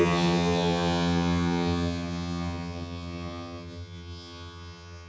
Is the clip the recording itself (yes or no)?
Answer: no